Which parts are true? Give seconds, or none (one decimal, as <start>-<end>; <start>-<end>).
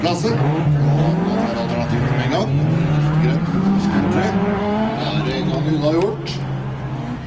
0.0-3.4; 4.0-4.6; 5.1-7.3